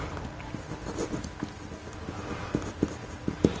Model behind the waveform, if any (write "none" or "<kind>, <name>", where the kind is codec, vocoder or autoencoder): none